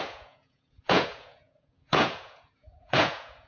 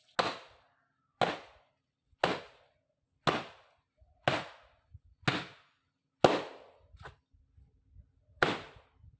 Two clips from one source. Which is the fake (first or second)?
first